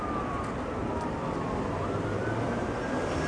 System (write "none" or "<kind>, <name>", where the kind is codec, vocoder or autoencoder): none